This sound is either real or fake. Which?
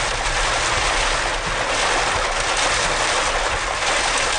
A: real